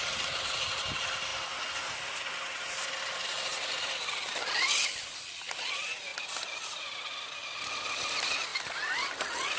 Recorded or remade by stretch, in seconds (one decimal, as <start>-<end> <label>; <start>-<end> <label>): 0.0-9.6 recorded